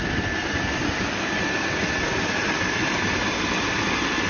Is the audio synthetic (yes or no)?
no